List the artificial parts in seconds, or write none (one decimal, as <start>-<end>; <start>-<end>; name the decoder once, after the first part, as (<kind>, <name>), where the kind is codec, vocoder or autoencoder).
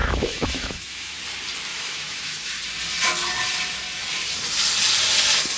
0.0-1.2 (autoencoder, DAC-VAE); 1.7-2.5